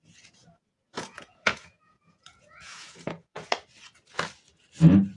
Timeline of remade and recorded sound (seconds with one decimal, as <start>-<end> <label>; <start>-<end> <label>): 0.0-0.4 recorded; 0.4-3.5 remade; 3.5-5.2 recorded